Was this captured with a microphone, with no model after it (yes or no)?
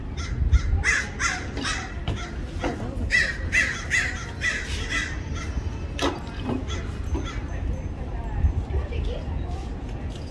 yes